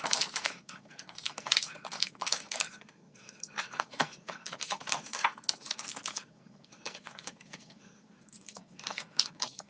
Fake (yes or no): yes